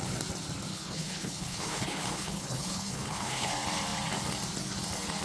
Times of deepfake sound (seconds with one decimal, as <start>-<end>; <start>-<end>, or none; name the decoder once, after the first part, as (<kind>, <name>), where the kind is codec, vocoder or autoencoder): 0.7-3.5 (codec, HILCodec)